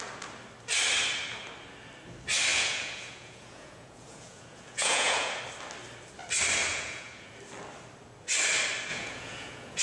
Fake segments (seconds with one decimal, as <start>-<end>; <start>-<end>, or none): 2.5-5.4; 6.7-7.3; 8.9-9.8